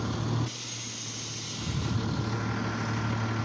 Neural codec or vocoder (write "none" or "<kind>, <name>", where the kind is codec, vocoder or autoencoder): none